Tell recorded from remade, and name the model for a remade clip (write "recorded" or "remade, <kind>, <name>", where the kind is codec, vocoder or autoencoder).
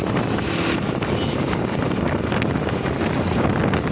recorded